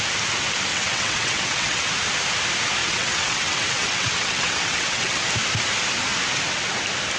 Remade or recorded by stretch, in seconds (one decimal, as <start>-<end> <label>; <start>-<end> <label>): 0.0-0.7 recorded; 0.7-1.9 remade; 1.9-2.8 recorded; 2.8-5.2 remade; 5.2-7.2 recorded